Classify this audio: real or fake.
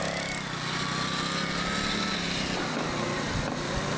real